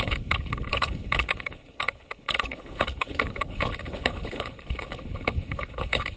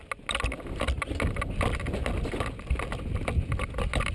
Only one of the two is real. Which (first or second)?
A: second